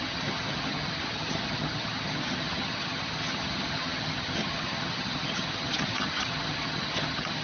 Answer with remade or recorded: remade